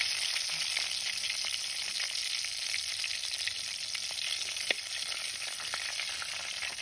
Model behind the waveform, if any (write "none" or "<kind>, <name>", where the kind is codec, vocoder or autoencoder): none